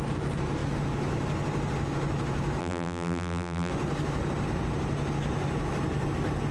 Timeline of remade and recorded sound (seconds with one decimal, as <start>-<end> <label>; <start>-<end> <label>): 0.0-2.6 recorded; 2.6-3.7 remade; 3.7-6.5 recorded